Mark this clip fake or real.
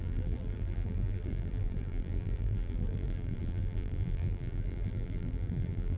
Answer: fake